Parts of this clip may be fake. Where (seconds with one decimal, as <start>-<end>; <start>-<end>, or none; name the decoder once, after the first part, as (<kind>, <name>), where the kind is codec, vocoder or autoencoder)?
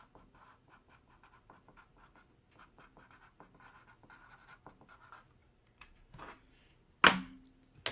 5.4-6.5 (vocoder, BigVGAN v2)